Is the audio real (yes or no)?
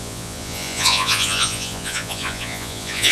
no